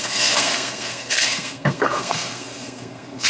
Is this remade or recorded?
remade